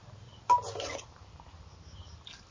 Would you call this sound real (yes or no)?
yes